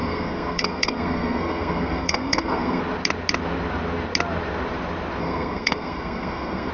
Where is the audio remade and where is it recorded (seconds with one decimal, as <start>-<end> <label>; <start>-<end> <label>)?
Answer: 0.0-2.8 remade; 2.8-5.2 recorded; 5.2-6.7 remade